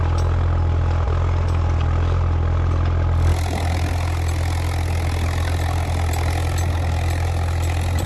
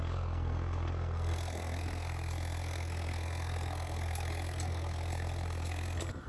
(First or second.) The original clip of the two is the first